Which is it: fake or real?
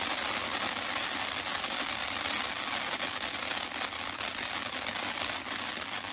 real